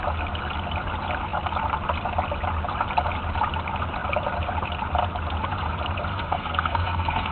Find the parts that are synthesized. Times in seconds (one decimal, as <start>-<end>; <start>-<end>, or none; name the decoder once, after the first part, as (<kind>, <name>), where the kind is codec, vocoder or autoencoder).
6.1-7.3 (codec, SNAC)

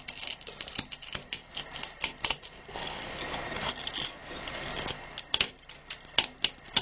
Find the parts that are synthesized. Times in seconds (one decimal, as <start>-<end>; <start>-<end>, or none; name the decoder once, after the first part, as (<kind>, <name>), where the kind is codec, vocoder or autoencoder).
none

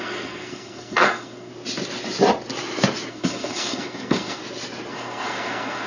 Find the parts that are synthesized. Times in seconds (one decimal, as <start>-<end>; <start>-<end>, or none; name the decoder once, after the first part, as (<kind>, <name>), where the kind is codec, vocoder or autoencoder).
0.0-1.5 (codec, SNAC); 3.1-4.4; 4.9-5.9

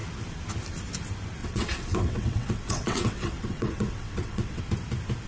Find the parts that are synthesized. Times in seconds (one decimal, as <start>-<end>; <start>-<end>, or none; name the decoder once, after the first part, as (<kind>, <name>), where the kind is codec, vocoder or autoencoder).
1.4-4.6 (vocoder, WaveNeXt)

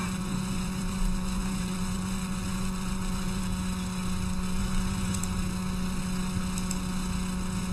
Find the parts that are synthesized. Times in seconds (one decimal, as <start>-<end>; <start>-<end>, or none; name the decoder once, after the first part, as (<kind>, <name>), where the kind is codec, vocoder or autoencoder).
0.0-3.4 (vocoder, Vocos); 4.6-5.2